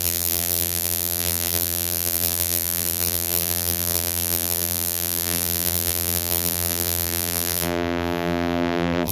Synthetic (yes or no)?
yes